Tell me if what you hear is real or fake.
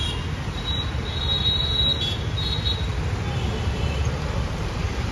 real